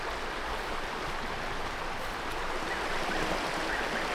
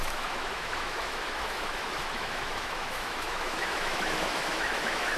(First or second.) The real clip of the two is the first